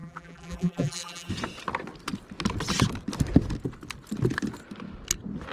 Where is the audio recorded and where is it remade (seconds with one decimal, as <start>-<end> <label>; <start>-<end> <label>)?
0.0-1.3 remade; 1.3-5.5 recorded